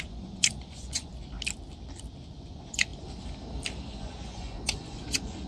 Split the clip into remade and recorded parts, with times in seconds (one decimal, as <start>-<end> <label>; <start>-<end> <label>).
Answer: 0.0-1.1 remade; 1.1-2.3 recorded; 2.3-2.9 remade; 2.9-3.8 recorded; 3.8-5.5 remade